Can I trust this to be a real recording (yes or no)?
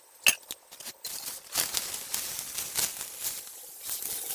yes